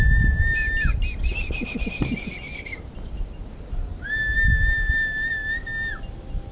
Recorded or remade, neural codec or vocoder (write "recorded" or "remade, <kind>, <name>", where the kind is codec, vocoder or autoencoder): recorded